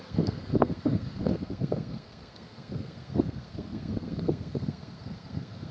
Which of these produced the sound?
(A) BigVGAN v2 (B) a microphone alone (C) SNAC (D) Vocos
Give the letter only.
C